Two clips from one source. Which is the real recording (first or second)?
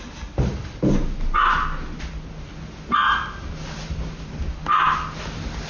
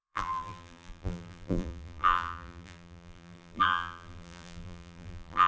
first